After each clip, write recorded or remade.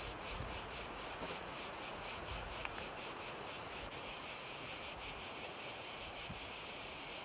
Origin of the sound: remade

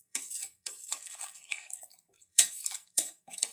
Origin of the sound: remade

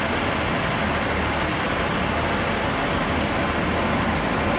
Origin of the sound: recorded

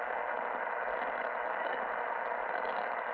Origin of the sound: recorded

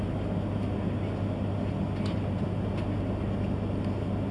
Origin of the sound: recorded